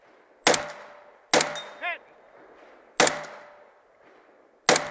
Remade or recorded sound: recorded